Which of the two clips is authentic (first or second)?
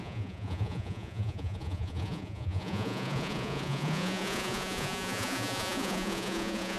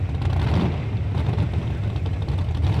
second